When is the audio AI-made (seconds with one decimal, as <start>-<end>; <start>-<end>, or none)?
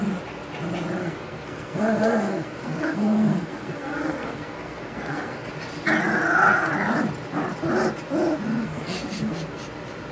1.0-5.5; 8.6-9.6